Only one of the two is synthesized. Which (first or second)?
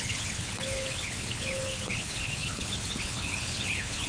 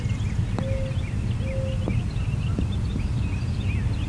first